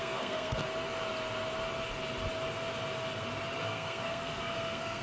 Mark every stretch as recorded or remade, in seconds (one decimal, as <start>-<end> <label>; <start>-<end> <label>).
0.0-0.6 remade; 0.6-3.6 recorded; 3.6-5.0 remade